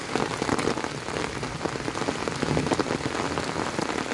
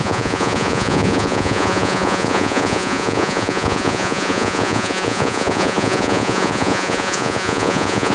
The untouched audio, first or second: first